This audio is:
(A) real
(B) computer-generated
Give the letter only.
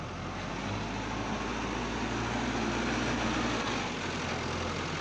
A